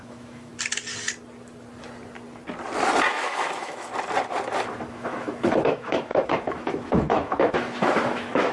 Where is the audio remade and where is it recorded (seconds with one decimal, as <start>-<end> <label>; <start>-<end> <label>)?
0.0-0.5 remade; 0.5-3.1 recorded; 3.1-3.9 remade; 3.9-4.9 recorded; 4.9-8.5 remade